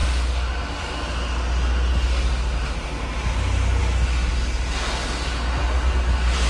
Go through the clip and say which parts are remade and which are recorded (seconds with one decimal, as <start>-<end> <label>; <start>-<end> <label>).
0.0-6.5 recorded